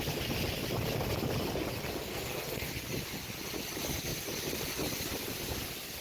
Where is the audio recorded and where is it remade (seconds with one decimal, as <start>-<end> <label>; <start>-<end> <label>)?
0.0-2.1 recorded; 2.1-2.7 remade; 2.7-6.0 recorded

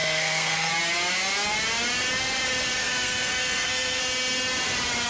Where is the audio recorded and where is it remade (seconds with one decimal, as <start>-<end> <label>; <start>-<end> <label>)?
0.0-0.7 remade; 0.7-2.8 recorded; 2.8-4.0 remade; 4.0-5.1 recorded

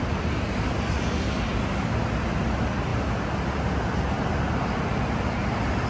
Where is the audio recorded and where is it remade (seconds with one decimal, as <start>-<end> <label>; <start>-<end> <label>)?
0.0-5.9 recorded

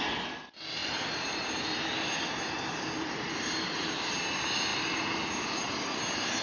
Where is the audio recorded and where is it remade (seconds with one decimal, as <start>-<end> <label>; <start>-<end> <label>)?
0.0-0.8 recorded; 0.8-4.1 remade; 4.1-4.7 recorded; 4.7-6.0 remade; 6.0-6.4 recorded